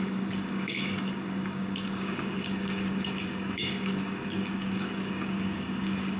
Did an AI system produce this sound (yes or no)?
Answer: yes